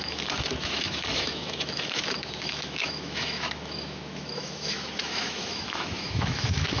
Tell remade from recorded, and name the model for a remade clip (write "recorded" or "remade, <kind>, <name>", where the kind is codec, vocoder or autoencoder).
remade, autoencoder, DAC-VAE